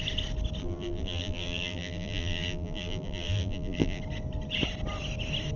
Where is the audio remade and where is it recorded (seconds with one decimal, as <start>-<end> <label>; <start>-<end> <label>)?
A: 0.0-0.6 recorded; 0.6-4.0 remade; 4.0-5.6 recorded